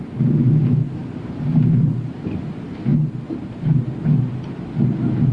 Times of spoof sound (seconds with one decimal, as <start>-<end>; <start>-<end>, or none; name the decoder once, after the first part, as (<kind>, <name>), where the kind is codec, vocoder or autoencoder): 1.0-2.1 (vocoder, BigVGAN v2); 2.9-3.8

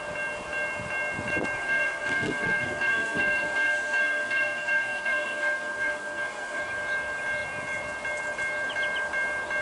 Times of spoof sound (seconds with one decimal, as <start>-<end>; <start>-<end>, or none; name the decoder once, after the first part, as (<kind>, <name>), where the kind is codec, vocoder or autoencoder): 1.6-6.6 (codec, SNAC)

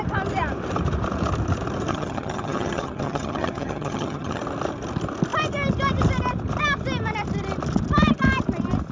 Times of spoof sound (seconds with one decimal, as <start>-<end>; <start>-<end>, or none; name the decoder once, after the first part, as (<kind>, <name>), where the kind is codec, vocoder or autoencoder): 1.9-4.4 (vocoder, HiFi-GAN)

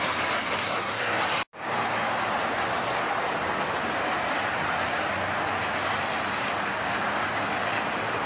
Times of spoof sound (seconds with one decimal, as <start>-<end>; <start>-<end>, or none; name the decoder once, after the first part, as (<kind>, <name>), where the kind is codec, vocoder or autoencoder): 0.6-1.2 (codec, SNAC)

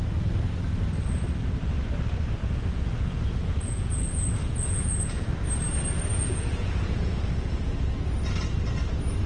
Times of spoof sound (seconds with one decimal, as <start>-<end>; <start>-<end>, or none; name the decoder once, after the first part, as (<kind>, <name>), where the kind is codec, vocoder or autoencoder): 2.4-5.3 (vocoder, Vocos); 6.1-7.7

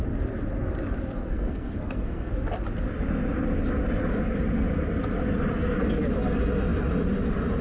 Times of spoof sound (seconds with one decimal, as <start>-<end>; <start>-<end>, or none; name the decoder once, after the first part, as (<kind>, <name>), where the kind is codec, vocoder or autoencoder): 1.3-2.3 (codec, SNAC)